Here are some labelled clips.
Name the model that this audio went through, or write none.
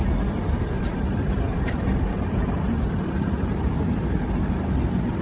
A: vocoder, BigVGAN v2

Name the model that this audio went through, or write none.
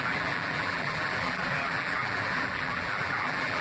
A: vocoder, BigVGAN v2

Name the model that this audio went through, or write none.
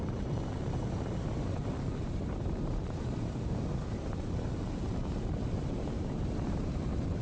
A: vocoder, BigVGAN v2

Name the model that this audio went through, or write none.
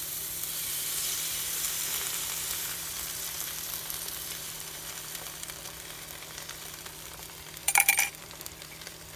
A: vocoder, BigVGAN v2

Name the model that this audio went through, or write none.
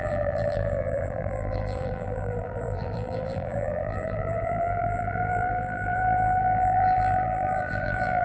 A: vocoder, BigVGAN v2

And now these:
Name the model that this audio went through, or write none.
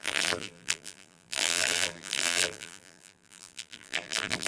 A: vocoder, BigVGAN v2